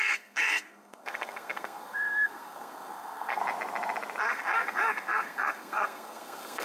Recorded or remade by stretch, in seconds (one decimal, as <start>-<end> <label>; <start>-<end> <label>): 0.0-3.4 remade; 3.4-4.2 recorded; 4.2-6.6 remade